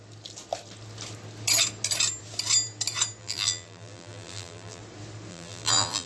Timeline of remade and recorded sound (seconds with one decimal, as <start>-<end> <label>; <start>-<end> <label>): 0.0-3.2 recorded; 3.2-4.8 remade; 4.8-5.3 recorded; 5.3-6.1 remade